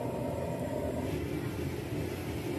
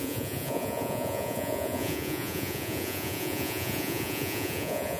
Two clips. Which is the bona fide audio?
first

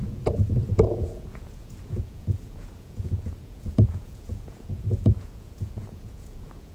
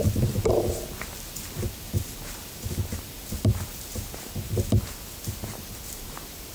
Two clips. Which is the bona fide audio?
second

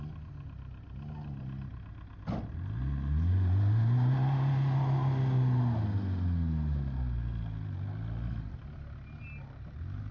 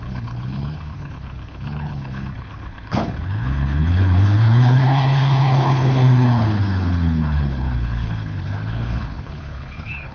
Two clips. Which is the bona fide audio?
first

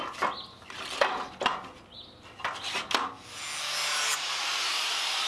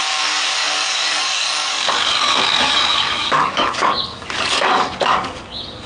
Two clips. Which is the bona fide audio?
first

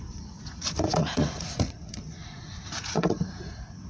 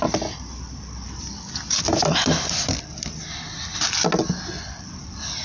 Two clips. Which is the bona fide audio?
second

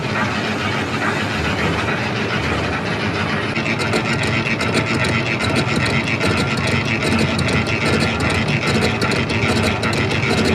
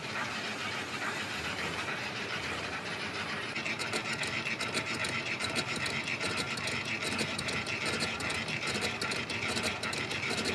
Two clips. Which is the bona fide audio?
first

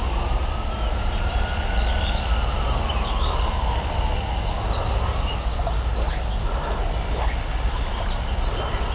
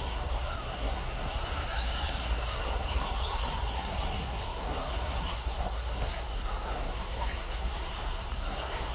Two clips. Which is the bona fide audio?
first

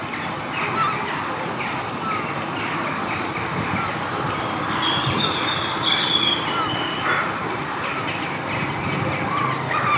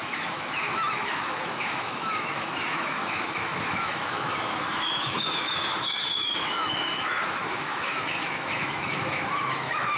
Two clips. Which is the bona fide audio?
first